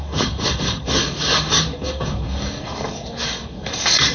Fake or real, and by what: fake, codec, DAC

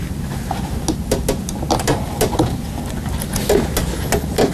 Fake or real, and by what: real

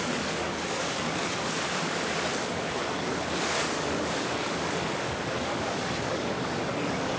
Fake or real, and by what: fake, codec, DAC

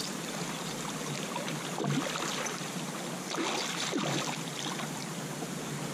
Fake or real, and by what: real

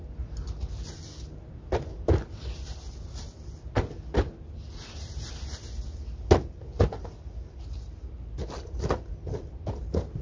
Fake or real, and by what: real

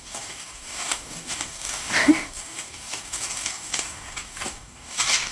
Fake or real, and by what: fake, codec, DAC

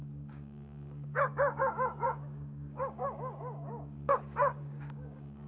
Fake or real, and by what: fake, codec, DAC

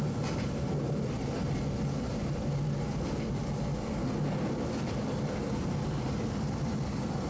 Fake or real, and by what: real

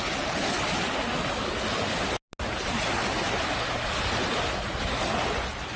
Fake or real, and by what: real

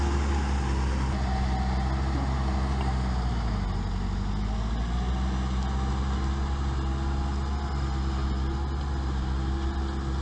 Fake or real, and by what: real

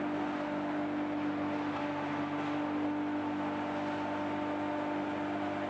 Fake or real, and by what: real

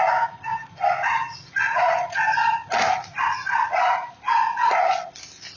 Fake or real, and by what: real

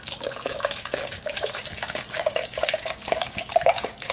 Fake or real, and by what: fake, codec, DAC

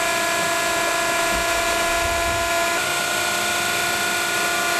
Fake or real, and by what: real